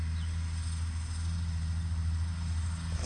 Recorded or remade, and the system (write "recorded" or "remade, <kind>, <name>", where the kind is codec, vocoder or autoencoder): recorded